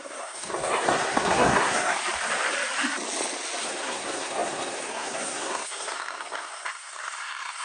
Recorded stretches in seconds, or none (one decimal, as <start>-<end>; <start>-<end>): 2.0-3.6